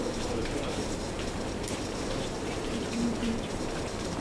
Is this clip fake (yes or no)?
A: yes